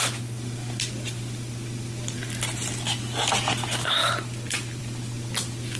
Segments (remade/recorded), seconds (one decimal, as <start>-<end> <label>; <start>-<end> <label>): 0.0-5.8 recorded